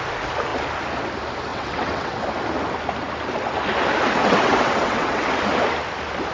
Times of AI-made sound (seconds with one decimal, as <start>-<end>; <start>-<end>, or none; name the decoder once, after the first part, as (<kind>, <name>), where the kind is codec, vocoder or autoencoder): 1.5-2.2 (vocoder, WaveNeXt); 4.2-5.3